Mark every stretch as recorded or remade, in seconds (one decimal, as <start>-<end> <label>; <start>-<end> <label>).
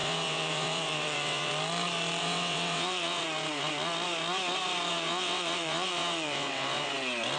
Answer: 0.0-1.5 remade; 1.5-2.2 recorded; 2.2-3.2 remade; 3.2-4.9 recorded; 4.9-6.9 remade; 6.9-7.4 recorded